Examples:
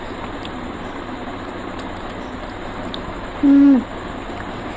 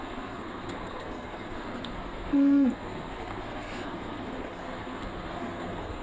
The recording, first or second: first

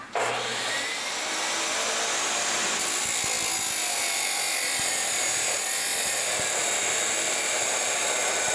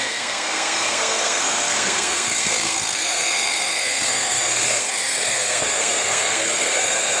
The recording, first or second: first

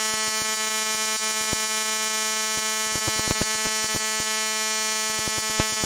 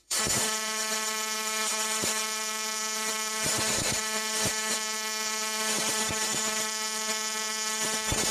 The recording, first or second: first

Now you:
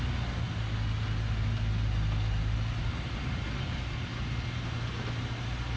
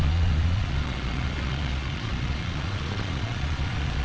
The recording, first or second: first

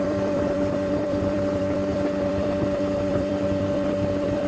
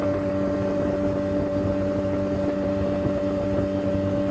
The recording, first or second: second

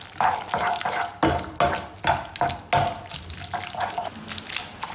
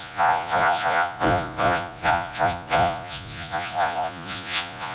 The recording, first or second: first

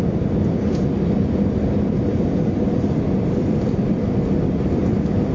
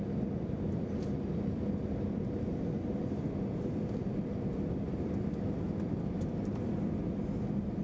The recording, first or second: second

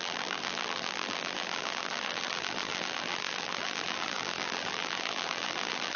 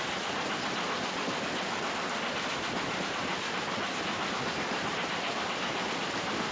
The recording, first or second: second